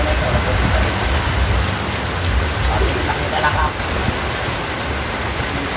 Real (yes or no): yes